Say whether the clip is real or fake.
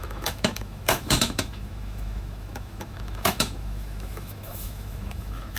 fake